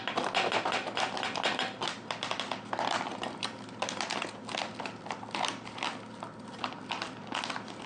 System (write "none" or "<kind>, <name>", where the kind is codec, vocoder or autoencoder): none